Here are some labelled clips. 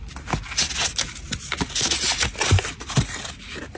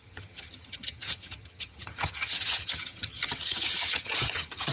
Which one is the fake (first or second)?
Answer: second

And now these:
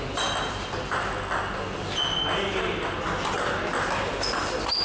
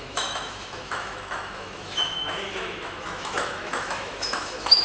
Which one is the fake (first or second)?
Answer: second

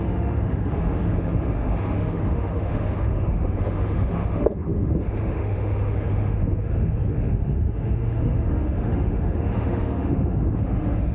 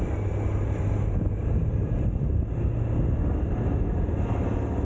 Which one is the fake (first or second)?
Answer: first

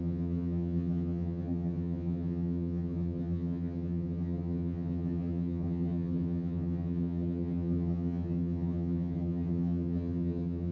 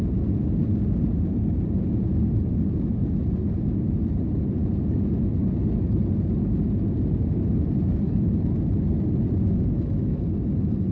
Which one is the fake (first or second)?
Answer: first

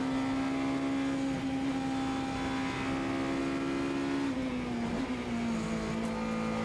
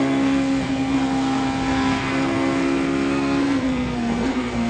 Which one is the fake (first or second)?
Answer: second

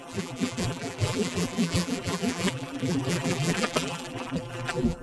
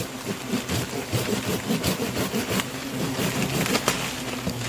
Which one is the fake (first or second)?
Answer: first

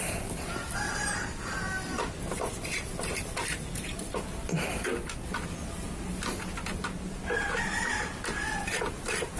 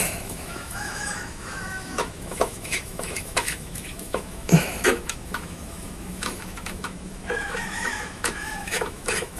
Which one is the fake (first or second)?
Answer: second